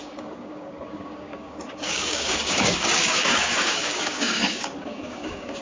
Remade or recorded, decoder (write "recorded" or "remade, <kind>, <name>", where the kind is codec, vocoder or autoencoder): remade, codec, DAC